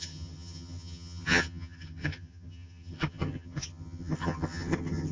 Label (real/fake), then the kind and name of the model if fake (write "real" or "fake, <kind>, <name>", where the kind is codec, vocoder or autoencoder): fake, vocoder, HiFi-GAN